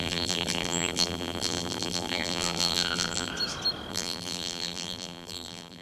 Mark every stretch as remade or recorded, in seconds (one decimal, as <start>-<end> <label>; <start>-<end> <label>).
0.0-3.3 remade; 3.3-3.9 recorded; 3.9-5.8 remade